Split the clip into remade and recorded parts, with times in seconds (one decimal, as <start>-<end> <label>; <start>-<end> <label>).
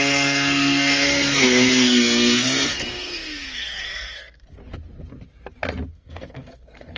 0.0-4.6 remade; 4.6-5.9 recorded; 5.9-7.0 remade